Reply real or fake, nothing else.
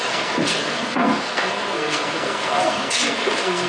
fake